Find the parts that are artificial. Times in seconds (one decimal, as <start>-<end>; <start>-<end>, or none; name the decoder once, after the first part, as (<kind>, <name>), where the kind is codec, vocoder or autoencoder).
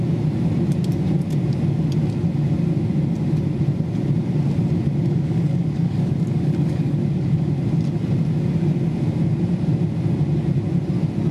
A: 5.1-7.5 (codec, DAC)